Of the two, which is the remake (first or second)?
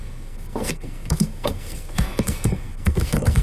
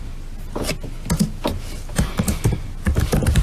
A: first